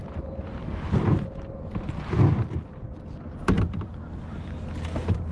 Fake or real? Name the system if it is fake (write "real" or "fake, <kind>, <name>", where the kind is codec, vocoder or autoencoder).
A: real